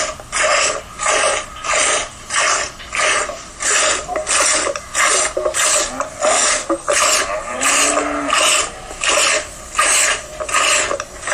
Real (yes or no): yes